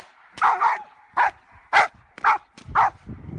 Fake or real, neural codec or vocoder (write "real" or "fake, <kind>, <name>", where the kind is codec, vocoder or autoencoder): real